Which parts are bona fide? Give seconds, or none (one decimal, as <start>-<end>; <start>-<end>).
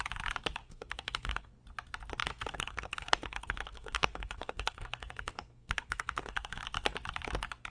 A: 0.0-0.6; 1.6-2.2; 6.6-7.7